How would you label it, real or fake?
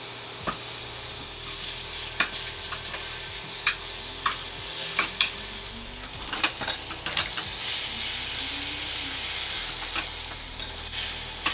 real